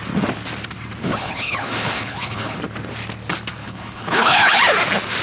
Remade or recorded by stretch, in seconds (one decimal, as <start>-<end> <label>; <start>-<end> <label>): 0.0-1.0 recorded; 1.0-2.6 remade; 2.6-3.6 recorded; 3.6-4.6 remade; 4.6-5.2 recorded